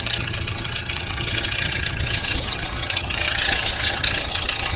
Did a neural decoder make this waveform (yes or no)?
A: yes